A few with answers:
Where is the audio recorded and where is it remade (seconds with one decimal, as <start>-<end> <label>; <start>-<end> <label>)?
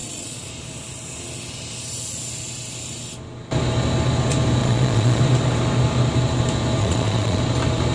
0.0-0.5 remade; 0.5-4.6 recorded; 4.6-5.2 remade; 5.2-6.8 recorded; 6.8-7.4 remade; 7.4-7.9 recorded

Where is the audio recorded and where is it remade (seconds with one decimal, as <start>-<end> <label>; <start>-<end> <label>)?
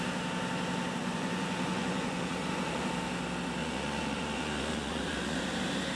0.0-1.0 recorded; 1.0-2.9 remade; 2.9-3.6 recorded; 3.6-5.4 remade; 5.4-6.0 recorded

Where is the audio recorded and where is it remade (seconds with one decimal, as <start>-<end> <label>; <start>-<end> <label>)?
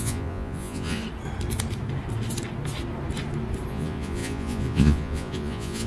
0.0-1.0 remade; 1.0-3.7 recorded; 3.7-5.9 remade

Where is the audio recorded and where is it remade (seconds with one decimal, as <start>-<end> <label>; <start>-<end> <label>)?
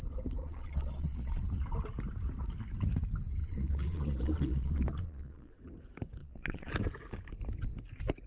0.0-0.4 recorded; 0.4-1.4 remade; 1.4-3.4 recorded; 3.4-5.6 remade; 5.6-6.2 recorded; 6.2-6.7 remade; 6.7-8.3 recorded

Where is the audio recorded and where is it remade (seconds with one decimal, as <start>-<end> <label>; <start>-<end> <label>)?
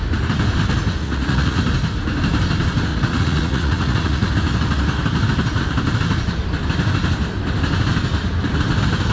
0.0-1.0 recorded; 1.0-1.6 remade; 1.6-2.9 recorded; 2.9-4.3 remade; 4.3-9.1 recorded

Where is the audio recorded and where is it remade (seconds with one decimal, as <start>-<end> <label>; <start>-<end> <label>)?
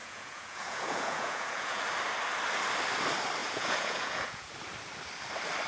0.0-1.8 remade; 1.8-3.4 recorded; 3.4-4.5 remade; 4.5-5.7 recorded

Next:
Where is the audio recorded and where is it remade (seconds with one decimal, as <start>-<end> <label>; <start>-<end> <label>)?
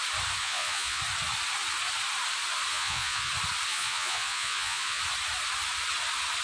0.0-0.4 recorded; 0.4-1.0 remade; 1.0-2.7 recorded; 2.7-3.3 remade; 3.3-3.7 recorded; 3.7-5.0 remade; 5.0-6.4 recorded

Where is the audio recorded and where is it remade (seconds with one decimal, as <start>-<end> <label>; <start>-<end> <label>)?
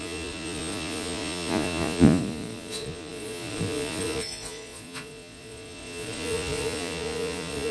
0.0-7.7 remade